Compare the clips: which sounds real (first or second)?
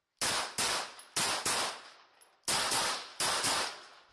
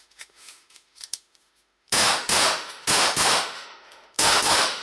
first